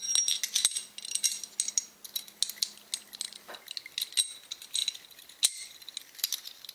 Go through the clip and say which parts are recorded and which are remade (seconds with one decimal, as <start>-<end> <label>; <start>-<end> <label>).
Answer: 0.0-6.7 recorded